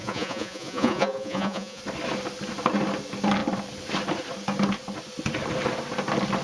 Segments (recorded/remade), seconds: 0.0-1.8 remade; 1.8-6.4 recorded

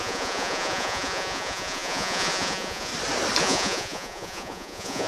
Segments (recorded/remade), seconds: 0.0-2.9 remade; 2.9-3.4 recorded; 3.4-5.1 remade

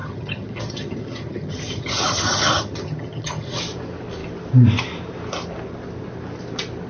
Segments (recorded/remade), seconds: 0.0-3.6 remade; 3.6-6.9 recorded

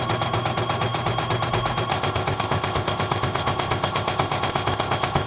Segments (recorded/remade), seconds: 0.0-1.9 recorded; 1.9-5.3 remade

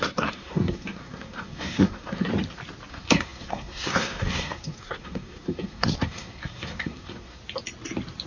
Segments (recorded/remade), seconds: 0.0-2.3 remade; 2.3-2.9 recorded; 2.9-7.4 remade; 7.4-8.3 recorded

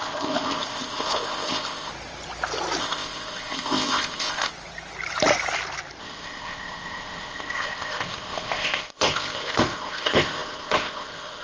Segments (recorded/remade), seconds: 0.0-1.9 remade; 1.9-2.8 recorded; 2.8-4.5 remade; 4.5-6.0 recorded; 6.0-11.4 remade

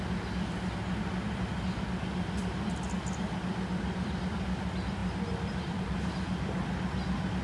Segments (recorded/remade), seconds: 0.0-7.4 recorded

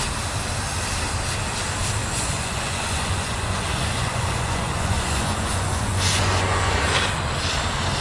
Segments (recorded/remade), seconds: 0.0-2.0 recorded; 2.0-6.8 remade; 6.8-8.0 recorded